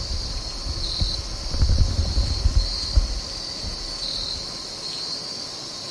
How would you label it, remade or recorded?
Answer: recorded